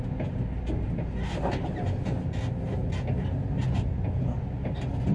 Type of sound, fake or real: real